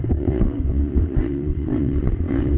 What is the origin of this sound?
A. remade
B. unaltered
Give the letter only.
A